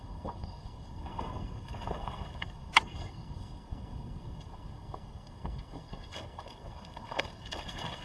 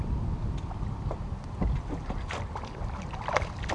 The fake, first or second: first